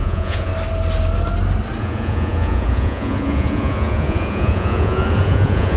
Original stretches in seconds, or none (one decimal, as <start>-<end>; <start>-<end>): 0.5-1.8